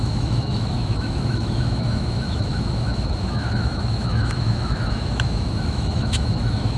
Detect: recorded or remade remade